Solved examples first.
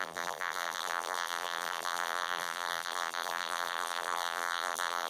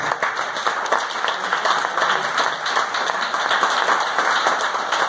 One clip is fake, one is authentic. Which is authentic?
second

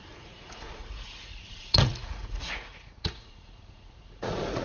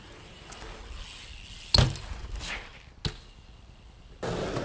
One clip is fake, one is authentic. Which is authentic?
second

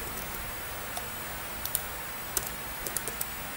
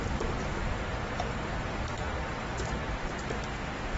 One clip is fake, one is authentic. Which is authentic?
first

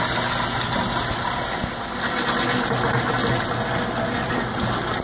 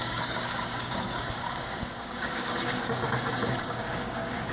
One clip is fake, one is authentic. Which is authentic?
first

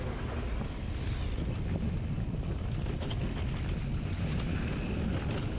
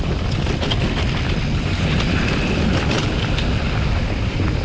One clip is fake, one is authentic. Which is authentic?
first